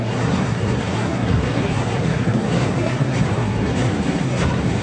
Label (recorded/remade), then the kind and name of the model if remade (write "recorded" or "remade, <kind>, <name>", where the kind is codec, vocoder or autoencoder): remade, codec, SNAC